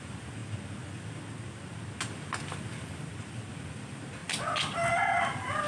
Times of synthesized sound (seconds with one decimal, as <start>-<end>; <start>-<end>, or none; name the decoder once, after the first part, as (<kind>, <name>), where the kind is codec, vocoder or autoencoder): none